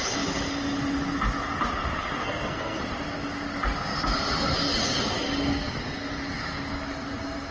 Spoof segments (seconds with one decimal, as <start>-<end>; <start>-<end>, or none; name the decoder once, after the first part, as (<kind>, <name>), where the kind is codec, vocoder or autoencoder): 2.2-2.8 (codec, SNAC)

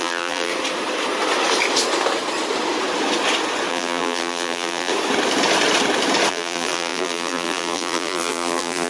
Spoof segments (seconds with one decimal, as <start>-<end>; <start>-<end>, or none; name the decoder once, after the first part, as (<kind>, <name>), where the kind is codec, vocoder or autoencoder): 0.0-0.5 (vocoder, BigVGAN v2); 3.7-4.9; 6.3-8.9

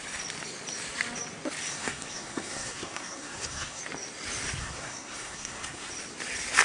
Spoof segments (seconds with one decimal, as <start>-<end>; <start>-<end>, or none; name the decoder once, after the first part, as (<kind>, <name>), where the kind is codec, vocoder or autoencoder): 1.7-3.8 (codec, SNAC); 4.6-5.9

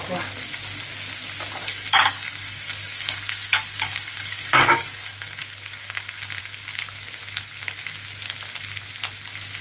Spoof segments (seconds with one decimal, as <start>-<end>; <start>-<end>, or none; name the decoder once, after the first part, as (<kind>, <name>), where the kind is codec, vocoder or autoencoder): 1.6-6.4 (codec, DAC)

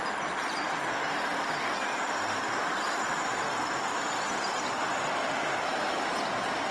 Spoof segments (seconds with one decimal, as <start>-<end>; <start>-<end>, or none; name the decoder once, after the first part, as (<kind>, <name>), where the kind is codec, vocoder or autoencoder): none

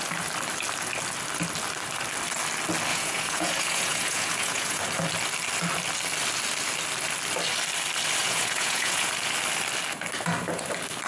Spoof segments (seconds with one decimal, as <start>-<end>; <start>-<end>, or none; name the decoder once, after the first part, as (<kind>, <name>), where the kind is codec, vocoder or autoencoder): 2.9-4.8 (vocoder, Vocos); 8.2-9.1

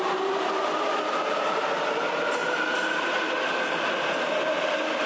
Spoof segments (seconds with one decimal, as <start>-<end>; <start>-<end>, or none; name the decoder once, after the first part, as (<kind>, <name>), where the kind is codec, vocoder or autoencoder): none

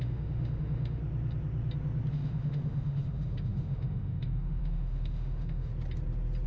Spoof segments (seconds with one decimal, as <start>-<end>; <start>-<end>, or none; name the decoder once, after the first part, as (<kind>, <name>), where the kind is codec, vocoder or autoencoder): 0.0-1.0 (autoencoder, DAC-VAE); 2.1-5.7